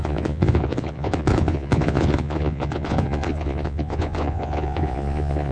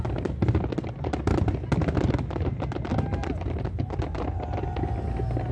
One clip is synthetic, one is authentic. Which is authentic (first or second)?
second